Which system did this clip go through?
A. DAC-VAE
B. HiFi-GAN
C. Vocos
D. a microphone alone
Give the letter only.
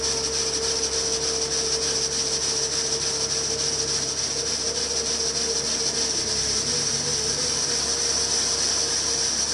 D